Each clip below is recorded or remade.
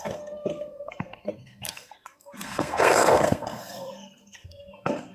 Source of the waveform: remade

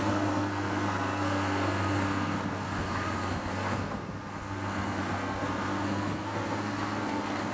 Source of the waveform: remade